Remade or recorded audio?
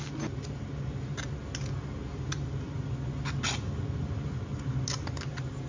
recorded